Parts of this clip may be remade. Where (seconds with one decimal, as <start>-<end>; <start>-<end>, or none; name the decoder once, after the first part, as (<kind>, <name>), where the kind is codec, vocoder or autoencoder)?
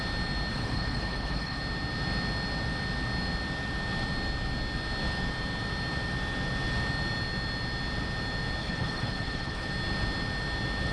0.5-1.6 (codec, HILCodec); 8.6-9.7